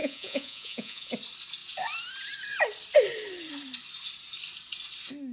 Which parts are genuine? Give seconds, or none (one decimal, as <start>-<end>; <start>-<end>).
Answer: 1.1-5.3